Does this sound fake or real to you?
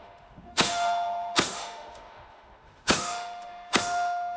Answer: fake